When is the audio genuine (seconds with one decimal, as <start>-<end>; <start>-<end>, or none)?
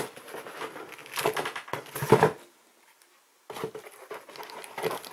0.0-5.1